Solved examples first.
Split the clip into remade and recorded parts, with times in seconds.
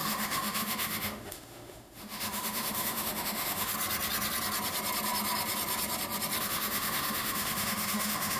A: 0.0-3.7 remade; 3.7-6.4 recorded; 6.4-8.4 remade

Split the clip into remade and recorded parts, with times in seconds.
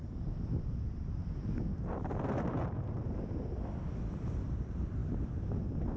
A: 0.0-6.0 recorded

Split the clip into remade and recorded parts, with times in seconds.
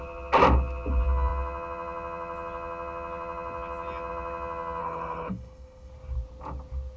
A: 0.0-4.8 recorded; 4.8-5.9 remade; 5.9-7.0 recorded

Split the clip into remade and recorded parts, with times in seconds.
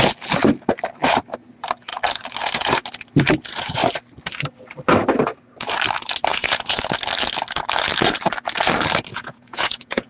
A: 0.0-6.3 recorded; 6.3-6.8 remade; 6.8-9.1 recorded; 9.1-10.1 remade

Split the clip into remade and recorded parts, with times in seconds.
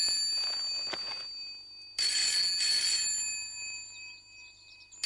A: 0.0-5.1 recorded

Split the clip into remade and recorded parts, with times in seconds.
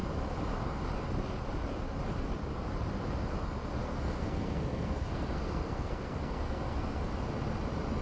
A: 0.0-3.8 recorded; 3.8-7.1 remade; 7.1-8.0 recorded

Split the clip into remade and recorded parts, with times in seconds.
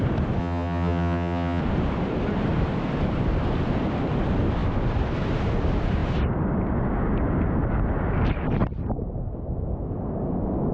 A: 0.0-0.4 recorded; 0.4-1.6 remade; 1.6-10.7 recorded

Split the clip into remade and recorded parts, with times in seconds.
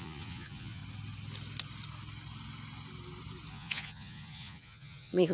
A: 0.0-0.8 remade; 0.8-3.5 recorded; 3.5-5.3 remade